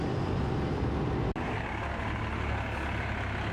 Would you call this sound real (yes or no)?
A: yes